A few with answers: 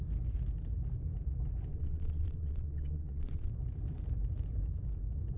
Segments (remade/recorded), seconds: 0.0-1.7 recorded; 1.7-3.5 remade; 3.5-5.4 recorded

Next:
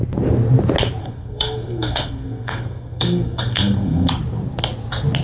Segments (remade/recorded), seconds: 0.0-1.0 recorded; 1.0-4.1 remade; 4.1-5.2 recorded